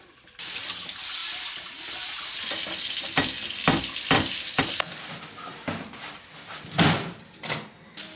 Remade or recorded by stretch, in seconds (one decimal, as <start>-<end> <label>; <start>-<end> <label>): 0.0-8.2 remade